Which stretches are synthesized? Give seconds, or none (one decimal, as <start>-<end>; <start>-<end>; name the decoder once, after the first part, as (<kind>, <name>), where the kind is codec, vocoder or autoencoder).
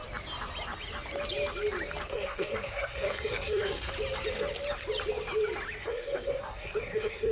2.1-3.9 (codec, SNAC); 5.8-7.3